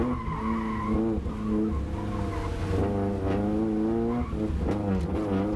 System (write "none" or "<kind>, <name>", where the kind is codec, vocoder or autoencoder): none